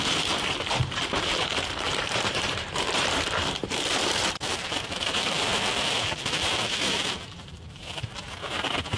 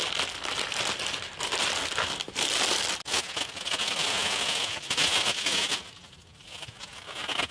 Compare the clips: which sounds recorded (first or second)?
second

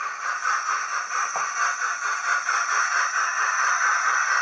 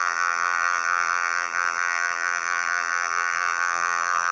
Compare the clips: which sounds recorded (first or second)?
first